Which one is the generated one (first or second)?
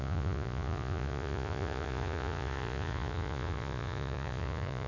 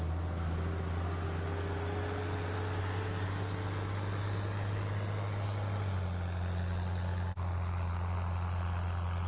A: first